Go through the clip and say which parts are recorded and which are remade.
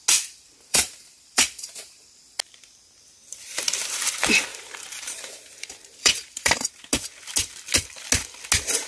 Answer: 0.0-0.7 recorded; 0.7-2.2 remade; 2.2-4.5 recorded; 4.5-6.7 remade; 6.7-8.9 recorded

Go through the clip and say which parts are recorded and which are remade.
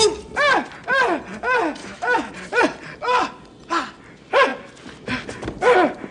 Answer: 0.0-1.8 recorded; 1.8-2.3 remade; 2.3-6.1 recorded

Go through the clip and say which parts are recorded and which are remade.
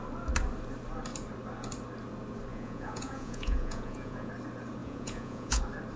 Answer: 0.0-2.5 recorded; 2.5-4.3 remade; 4.3-4.8 recorded; 4.8-5.6 remade; 5.6-6.0 recorded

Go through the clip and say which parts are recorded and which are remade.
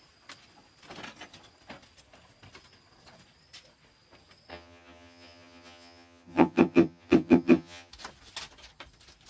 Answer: 0.0-4.5 recorded; 4.5-7.9 remade; 7.9-9.3 recorded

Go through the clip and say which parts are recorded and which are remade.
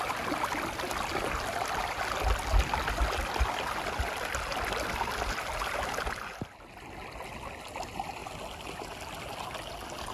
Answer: 0.0-10.1 recorded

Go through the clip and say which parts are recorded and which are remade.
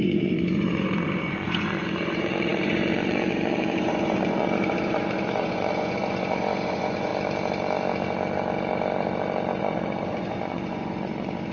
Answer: 0.0-7.1 remade; 7.1-9.6 recorded; 9.6-11.5 remade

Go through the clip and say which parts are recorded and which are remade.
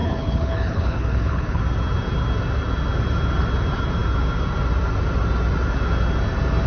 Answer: 0.0-1.6 remade; 1.6-6.7 recorded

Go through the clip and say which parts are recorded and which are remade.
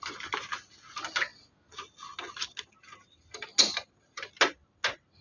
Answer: 0.0-5.2 recorded